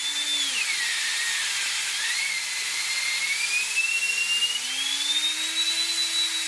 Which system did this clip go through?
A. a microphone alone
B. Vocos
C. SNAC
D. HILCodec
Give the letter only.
A